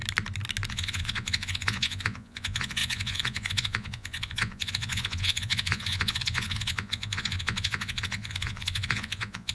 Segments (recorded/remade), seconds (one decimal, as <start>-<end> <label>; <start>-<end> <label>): 0.0-0.7 recorded; 0.7-9.5 remade